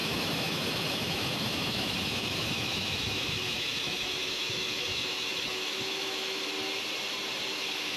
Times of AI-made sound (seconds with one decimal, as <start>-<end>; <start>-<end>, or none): 0.0-6.5; 7.5-8.0